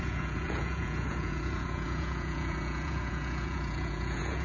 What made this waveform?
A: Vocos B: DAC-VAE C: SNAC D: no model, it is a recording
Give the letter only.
A